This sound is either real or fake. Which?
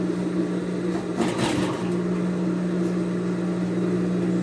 real